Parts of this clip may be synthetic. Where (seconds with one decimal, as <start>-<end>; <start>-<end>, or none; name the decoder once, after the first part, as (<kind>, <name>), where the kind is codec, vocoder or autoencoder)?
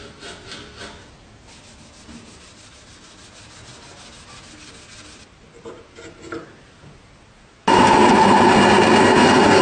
none